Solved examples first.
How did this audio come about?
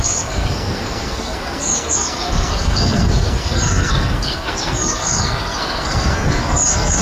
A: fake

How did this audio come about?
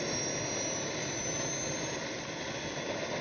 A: real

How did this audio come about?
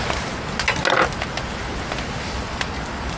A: real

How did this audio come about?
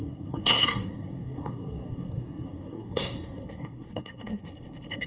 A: fake